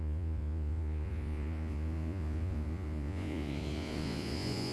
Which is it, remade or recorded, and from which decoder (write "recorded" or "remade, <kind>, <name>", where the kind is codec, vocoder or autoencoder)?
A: remade, vocoder, Vocos